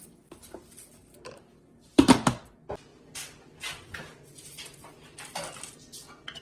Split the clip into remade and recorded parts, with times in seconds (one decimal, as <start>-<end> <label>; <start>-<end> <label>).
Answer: 0.0-6.4 recorded